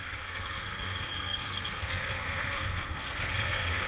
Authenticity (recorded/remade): remade